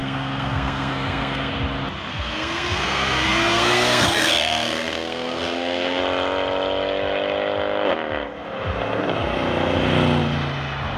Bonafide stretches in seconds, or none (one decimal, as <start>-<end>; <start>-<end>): 1.5-2.1; 6.0-11.0